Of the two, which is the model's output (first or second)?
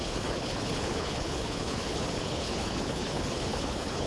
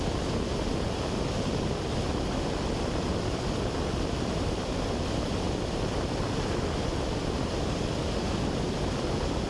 first